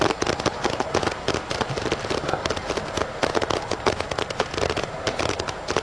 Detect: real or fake real